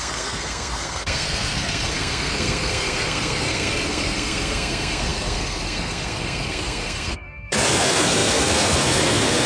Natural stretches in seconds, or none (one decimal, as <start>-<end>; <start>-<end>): none